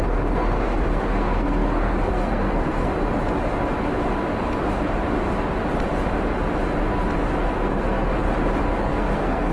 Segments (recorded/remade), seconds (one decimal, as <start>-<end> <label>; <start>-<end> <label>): 0.0-2.9 remade; 2.9-7.4 recorded; 7.4-8.1 remade; 8.1-8.8 recorded; 8.8-9.5 remade